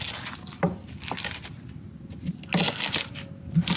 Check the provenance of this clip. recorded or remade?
recorded